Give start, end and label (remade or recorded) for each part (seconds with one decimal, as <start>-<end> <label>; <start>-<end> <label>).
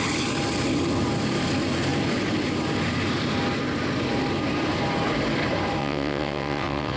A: 0.0-5.8 recorded; 5.8-7.0 remade